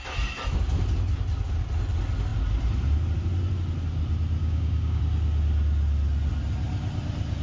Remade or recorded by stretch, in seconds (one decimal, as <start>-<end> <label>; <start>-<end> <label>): 0.0-4.4 recorded; 4.4-5.0 remade; 5.0-7.4 recorded